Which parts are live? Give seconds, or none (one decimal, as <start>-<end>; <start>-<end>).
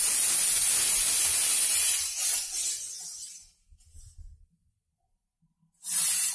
0.0-6.3